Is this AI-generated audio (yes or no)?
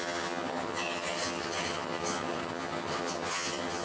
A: yes